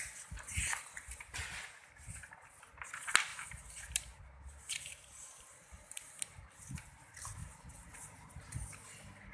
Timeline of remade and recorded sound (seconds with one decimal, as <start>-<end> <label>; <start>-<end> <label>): 0.0-3.3 recorded; 3.3-6.5 remade; 6.5-9.3 recorded